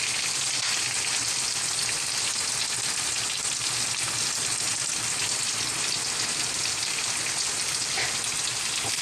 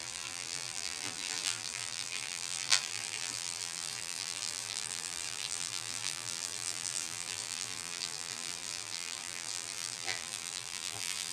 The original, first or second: first